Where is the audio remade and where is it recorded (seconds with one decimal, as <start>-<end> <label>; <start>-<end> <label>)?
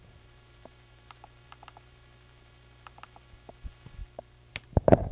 0.0-5.1 remade